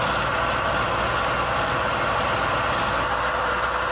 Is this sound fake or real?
real